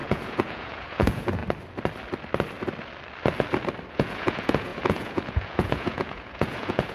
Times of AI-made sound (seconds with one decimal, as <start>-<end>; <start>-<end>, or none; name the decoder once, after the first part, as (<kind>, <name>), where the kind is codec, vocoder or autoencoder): 0.0-1.4 (vocoder, Vocos); 3.9-6.9